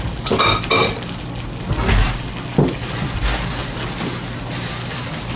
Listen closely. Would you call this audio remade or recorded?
recorded